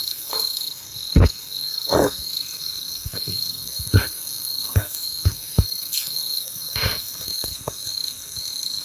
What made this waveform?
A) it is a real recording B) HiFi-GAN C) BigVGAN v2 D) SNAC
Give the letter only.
D